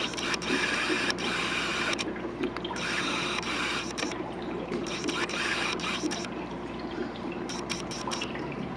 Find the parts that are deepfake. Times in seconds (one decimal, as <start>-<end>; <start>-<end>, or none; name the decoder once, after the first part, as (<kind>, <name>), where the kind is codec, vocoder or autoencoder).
0.0-8.8 (vocoder, BigVGAN v2)